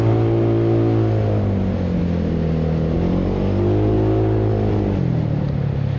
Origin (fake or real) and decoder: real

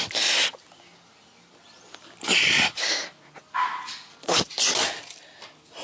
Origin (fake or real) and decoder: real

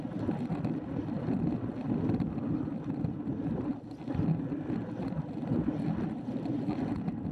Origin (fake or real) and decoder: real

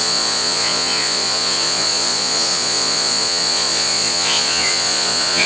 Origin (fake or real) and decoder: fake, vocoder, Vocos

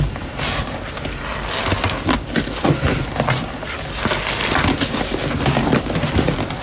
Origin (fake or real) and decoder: fake, vocoder, BigVGAN v2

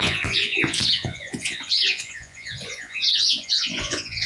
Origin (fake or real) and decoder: fake, vocoder, Vocos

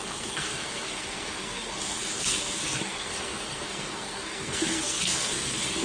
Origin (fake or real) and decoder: fake, codec, SNAC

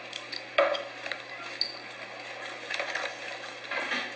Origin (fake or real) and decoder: real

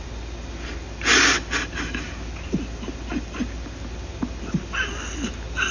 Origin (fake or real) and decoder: real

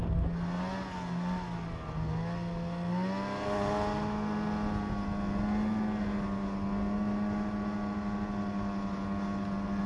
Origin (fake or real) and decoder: real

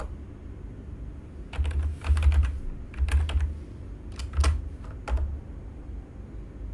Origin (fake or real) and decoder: real